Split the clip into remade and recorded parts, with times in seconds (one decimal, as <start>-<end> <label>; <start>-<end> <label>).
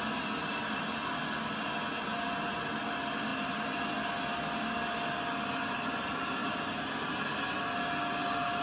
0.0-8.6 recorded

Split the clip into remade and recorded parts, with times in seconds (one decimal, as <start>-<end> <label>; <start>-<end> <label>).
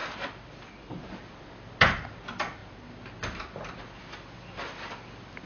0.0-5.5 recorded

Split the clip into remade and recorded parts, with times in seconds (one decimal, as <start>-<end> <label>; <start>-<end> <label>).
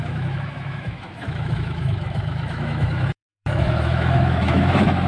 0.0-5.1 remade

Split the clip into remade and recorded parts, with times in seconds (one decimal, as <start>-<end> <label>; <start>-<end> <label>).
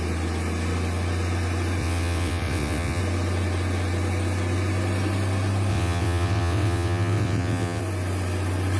0.0-1.8 recorded; 1.8-3.0 remade; 3.0-5.7 recorded; 5.7-7.8 remade; 7.8-8.8 recorded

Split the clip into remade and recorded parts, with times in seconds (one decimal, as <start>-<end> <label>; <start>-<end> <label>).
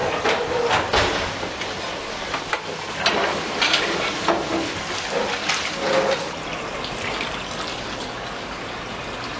0.0-7.7 recorded; 7.7-8.6 remade; 8.6-9.4 recorded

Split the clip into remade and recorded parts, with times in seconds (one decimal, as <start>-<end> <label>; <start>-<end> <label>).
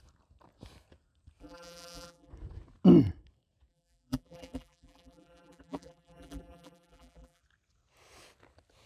0.0-1.4 recorded; 1.4-2.3 remade; 2.3-3.7 recorded; 3.7-7.4 remade; 7.4-8.9 recorded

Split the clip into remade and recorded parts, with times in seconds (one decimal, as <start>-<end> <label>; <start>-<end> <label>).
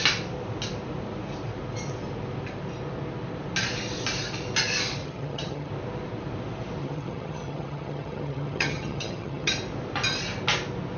0.0-5.0 recorded; 5.0-5.7 remade; 5.7-6.8 recorded; 6.8-9.5 remade; 9.5-11.0 recorded